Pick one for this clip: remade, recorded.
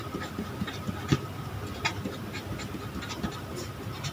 recorded